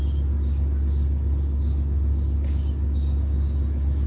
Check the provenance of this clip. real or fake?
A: real